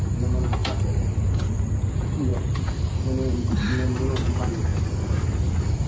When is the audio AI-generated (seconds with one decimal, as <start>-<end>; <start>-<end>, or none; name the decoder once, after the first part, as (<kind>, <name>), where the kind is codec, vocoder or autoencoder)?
0.6-1.7 (vocoder, BigVGAN v2); 2.3-3.0